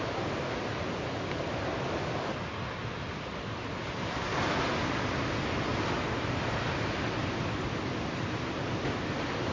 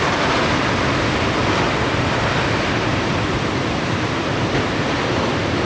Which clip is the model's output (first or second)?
second